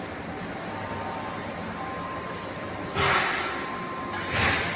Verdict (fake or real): real